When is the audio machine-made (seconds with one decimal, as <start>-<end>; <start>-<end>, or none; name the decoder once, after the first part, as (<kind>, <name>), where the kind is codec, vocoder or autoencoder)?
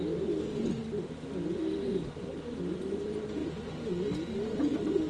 none